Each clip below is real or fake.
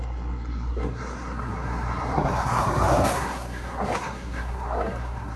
fake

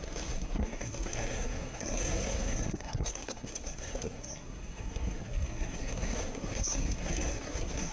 fake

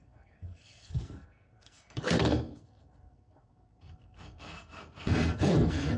fake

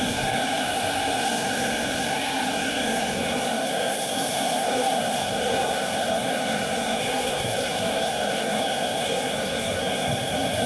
fake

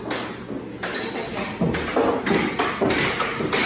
real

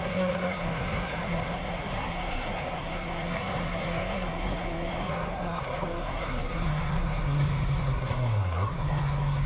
fake